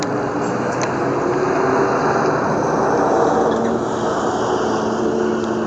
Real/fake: real